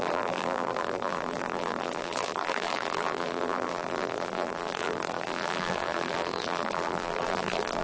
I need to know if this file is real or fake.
fake